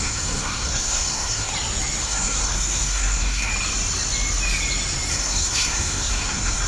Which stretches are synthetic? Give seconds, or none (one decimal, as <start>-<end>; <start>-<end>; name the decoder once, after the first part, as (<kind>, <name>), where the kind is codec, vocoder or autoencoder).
0.0-1.5 (codec, SNAC); 2.0-3.5; 5.1-6.7